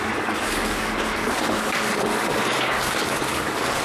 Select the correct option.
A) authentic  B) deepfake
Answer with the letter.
B